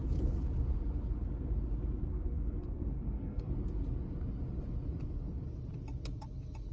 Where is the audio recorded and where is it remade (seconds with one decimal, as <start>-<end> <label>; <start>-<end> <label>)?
0.0-2.1 recorded; 2.1-3.5 remade; 3.5-6.7 recorded